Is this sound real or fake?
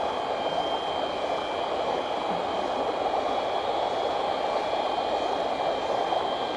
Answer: real